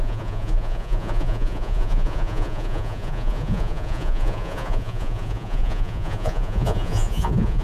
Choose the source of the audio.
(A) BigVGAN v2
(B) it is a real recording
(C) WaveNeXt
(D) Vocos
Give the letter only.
D